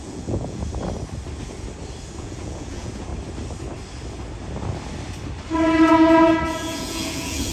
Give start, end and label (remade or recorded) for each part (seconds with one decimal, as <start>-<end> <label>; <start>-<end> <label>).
0.0-0.6 remade; 0.6-2.2 recorded; 2.2-3.1 remade; 3.1-5.9 recorded; 5.9-7.5 remade